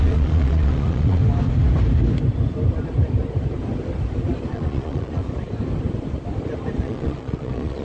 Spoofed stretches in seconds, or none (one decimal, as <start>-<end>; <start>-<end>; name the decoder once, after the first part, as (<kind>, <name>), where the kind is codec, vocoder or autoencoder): 0.0-1.2 (vocoder, Vocos); 4.5-5.2; 6.8-7.8